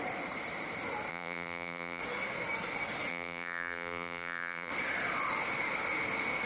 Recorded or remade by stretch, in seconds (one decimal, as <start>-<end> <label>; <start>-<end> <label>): 0.0-1.1 recorded; 1.1-2.0 remade; 2.0-3.1 recorded; 3.1-4.7 remade; 4.7-6.5 recorded